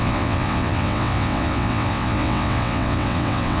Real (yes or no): no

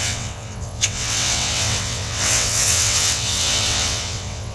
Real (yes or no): no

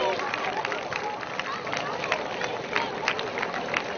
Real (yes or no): yes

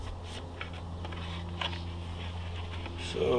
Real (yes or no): yes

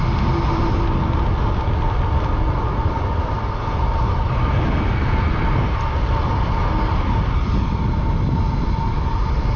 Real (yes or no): yes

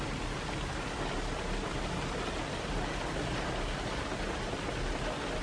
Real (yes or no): yes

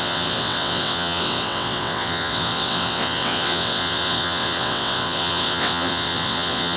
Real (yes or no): no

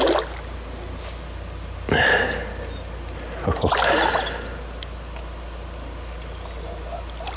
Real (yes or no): yes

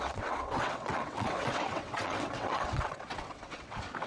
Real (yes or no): no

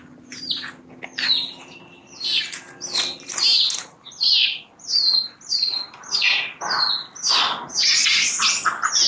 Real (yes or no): yes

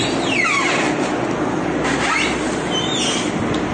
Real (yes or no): yes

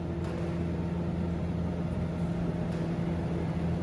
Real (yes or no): yes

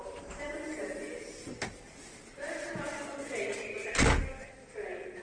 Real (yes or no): yes